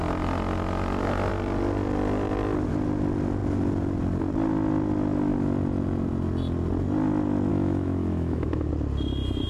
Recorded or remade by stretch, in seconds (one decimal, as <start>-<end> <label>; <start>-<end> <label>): 0.0-7.5 recorded; 7.5-8.7 remade; 8.7-9.5 recorded

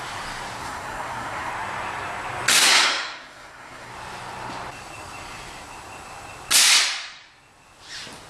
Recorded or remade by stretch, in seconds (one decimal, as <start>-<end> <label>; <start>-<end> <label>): 0.0-0.6 recorded; 0.6-1.5 remade; 1.5-2.5 recorded; 2.5-3.9 remade; 3.9-8.3 recorded

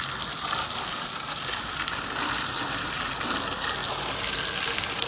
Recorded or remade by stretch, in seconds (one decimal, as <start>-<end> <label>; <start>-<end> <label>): 0.0-5.1 recorded

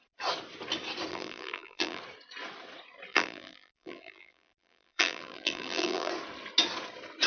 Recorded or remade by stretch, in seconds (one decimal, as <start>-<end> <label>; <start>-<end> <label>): 0.0-1.1 recorded; 1.1-2.0 remade; 2.0-3.1 recorded; 3.1-6.1 remade; 6.1-7.3 recorded

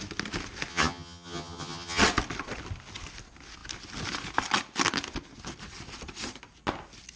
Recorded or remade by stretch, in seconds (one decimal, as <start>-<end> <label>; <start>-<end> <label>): 0.0-0.7 recorded; 0.7-2.0 remade; 2.0-7.2 recorded